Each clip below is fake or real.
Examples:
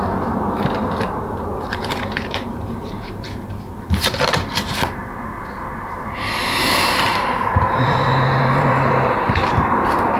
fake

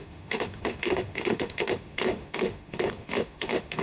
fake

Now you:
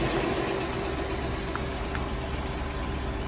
real